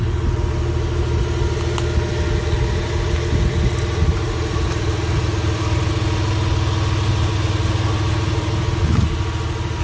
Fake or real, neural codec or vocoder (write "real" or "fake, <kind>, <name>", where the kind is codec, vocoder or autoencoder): real